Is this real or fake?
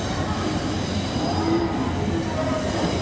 real